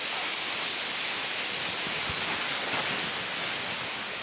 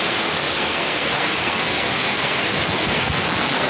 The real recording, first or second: first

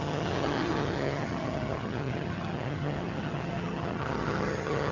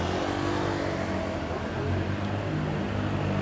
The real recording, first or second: second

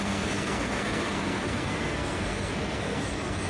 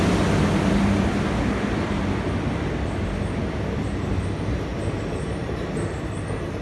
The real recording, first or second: second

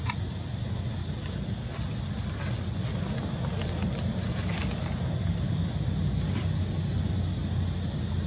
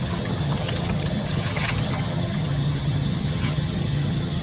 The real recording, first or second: first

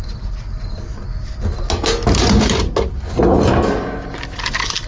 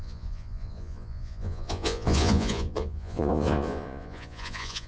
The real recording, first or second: first